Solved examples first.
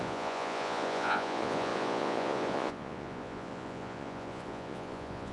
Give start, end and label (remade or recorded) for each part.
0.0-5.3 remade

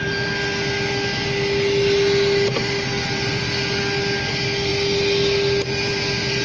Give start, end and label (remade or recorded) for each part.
0.0-6.4 recorded

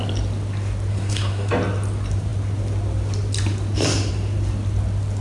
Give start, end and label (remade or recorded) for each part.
0.0-0.9 recorded; 0.9-1.5 remade; 1.5-5.2 recorded

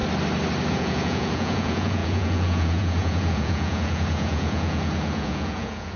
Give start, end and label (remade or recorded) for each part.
0.0-0.7 recorded; 0.7-6.0 remade

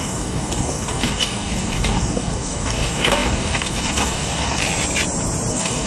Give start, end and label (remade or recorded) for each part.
0.0-4.6 remade; 4.6-5.5 recorded; 5.5-5.9 remade

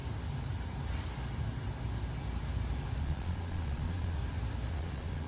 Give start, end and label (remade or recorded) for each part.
0.0-3.0 recorded; 3.0-4.2 remade; 4.2-4.7 recorded; 4.7-5.3 remade